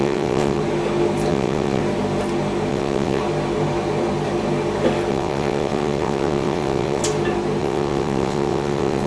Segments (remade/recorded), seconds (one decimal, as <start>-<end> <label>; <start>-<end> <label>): 0.0-0.6 remade; 0.6-1.3 recorded; 1.3-1.8 remade; 1.8-2.7 recorded; 2.7-3.2 remade; 3.2-5.1 recorded; 5.1-7.0 remade; 7.0-7.6 recorded; 7.6-9.1 remade